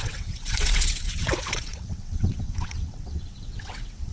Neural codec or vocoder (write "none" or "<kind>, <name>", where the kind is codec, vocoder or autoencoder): vocoder, WaveNeXt